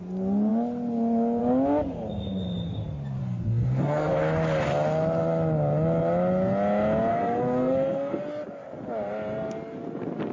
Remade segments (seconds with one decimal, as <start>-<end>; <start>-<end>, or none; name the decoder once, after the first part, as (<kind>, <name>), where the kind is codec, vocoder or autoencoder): 3.2-4.2 (codec, SNAC); 7.1-8.2